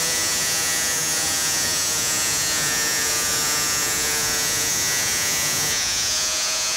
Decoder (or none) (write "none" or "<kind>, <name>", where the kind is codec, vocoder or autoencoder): vocoder, Vocos